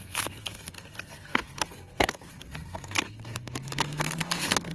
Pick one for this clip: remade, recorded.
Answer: remade